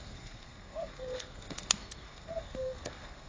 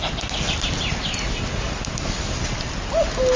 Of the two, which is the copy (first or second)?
first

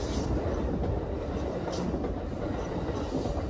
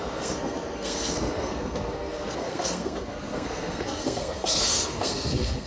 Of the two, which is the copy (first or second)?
second